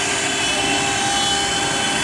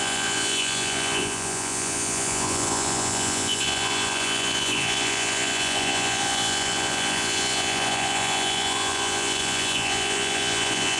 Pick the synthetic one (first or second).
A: second